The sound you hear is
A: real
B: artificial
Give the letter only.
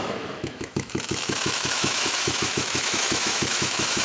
B